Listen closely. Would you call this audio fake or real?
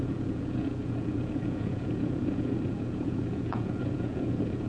fake